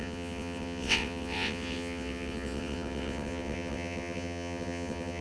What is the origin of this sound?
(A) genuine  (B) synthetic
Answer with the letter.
B